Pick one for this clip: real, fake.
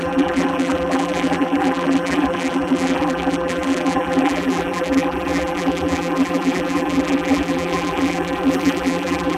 fake